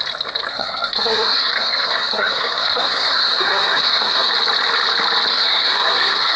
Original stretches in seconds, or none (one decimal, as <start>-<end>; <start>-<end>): 0.0-0.5; 4.3-5.3